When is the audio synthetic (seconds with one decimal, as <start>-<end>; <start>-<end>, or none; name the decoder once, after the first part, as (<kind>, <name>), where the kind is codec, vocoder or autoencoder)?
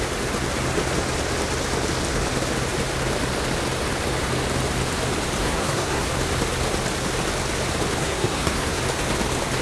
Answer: 5.4-6.1 (codec, SNAC); 8.0-8.8